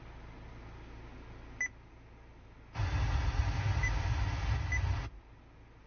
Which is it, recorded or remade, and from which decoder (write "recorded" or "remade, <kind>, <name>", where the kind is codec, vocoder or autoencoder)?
recorded